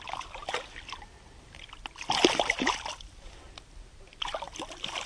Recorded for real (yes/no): yes